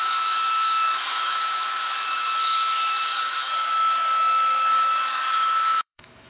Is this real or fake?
fake